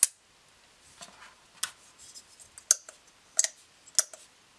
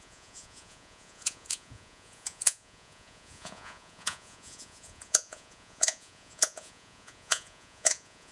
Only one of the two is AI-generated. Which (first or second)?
second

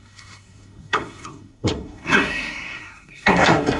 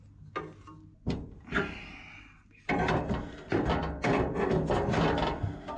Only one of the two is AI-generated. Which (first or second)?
first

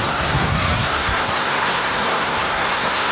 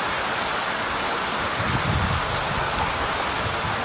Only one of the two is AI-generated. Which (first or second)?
first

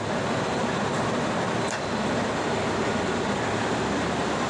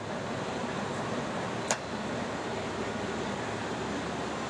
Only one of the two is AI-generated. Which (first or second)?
first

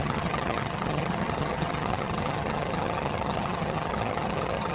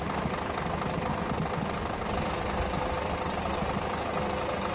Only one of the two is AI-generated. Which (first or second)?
first